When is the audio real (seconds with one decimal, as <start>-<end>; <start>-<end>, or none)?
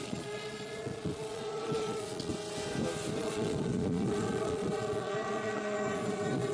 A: 2.3-3.2